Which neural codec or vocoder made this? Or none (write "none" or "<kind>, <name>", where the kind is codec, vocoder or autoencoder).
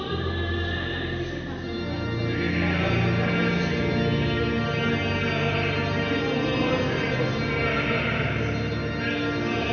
none